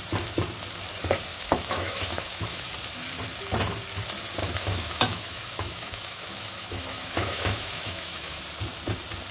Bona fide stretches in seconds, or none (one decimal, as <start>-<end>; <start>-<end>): 0.0-1.3; 2.7-4.4; 8.4-9.3